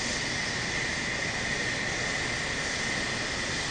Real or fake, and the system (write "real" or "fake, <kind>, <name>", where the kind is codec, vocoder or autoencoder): real